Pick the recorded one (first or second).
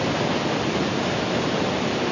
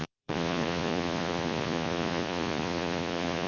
first